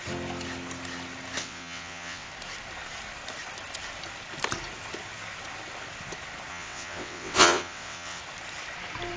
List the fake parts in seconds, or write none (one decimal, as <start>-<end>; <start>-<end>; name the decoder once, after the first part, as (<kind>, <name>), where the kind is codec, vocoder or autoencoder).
1.4-2.3 (vocoder, WaveNeXt); 6.5-8.2